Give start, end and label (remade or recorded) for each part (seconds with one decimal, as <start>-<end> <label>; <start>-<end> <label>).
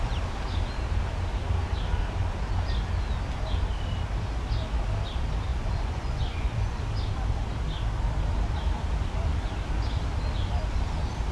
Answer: 0.0-5.5 recorded; 5.5-6.8 remade; 6.8-11.3 recorded